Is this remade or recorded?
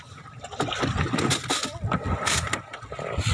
recorded